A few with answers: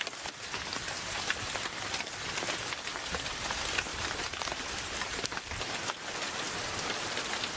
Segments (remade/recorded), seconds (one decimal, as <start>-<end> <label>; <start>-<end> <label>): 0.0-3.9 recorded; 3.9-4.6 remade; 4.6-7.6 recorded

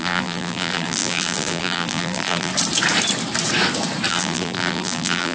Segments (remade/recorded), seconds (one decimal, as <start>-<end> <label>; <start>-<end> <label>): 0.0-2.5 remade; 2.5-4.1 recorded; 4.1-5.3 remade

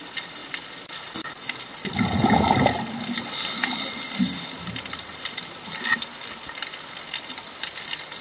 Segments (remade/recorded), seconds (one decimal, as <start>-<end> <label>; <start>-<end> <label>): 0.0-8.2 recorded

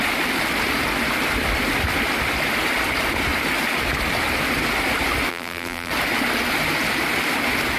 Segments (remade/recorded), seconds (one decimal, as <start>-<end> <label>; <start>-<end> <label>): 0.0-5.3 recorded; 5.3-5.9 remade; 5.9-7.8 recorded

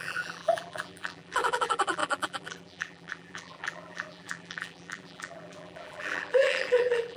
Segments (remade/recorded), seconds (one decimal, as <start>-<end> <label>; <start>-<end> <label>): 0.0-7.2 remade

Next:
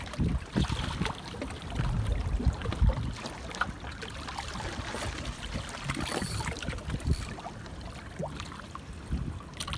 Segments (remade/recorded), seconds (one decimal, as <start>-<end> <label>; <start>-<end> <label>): 0.0-2.6 remade; 2.6-3.8 recorded; 3.8-8.2 remade; 8.2-9.0 recorded; 9.0-9.8 remade

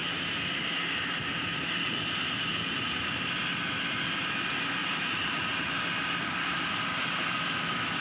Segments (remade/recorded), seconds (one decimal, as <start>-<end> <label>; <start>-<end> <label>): 0.0-4.8 recorded; 4.8-5.6 remade; 5.6-8.0 recorded

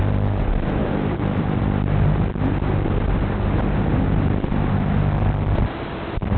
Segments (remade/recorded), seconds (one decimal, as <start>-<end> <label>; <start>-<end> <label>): 0.0-0.8 recorded; 0.8-1.6 remade; 1.6-6.4 recorded